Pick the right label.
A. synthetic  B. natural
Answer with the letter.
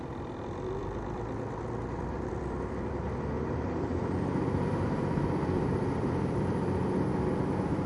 A